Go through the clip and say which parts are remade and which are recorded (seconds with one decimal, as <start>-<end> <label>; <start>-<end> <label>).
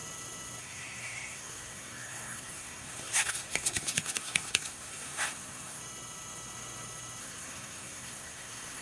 0.0-0.6 recorded; 0.6-5.8 remade; 5.8-7.2 recorded; 7.2-8.8 remade